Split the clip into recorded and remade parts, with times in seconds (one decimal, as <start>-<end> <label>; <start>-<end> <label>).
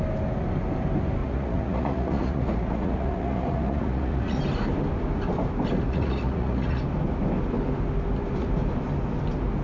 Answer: 0.0-1.2 recorded; 1.2-4.4 remade; 4.4-5.9 recorded; 5.9-6.8 remade; 6.8-9.6 recorded